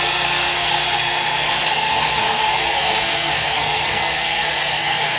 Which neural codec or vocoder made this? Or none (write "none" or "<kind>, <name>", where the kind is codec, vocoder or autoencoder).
codec, SNAC